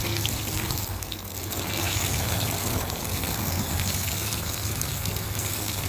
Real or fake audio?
fake